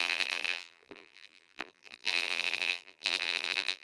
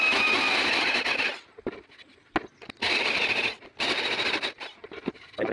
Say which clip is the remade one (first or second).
first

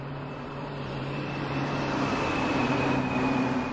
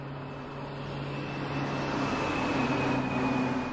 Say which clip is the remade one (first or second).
first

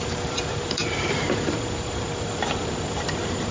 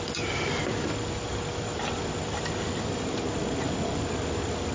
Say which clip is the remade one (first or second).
first